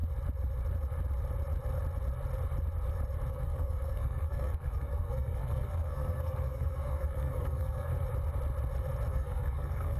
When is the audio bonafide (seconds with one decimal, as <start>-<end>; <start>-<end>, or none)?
0.0-3.3; 7.9-9.1